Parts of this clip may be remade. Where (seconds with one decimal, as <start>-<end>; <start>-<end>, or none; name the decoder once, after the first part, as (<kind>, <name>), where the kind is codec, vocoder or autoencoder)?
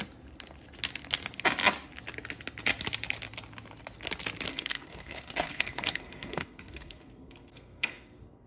4.5-8.5 (codec, SNAC)